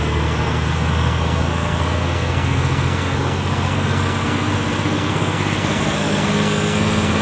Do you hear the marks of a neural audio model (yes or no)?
yes